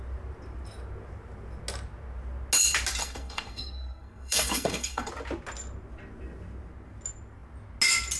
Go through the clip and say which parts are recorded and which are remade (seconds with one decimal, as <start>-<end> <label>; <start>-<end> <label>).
0.0-3.0 recorded; 3.0-5.1 remade; 5.1-8.2 recorded